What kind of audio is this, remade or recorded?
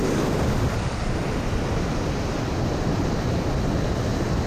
recorded